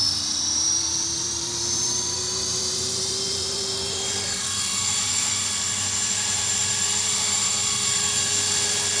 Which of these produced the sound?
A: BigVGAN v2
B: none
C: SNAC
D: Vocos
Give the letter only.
A